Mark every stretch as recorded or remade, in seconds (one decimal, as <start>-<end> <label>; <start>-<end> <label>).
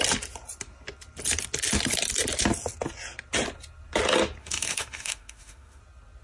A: 0.0-4.4 recorded; 4.4-5.8 remade; 5.8-6.2 recorded